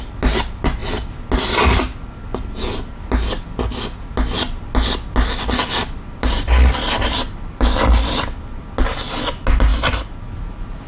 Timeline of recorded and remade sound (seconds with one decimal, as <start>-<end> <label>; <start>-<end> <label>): 0.0-10.9 recorded